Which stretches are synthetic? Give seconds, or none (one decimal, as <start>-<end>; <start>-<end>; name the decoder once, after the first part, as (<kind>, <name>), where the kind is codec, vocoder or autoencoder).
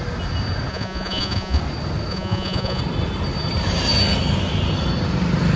0.7-1.6 (vocoder, Vocos); 2.1-2.8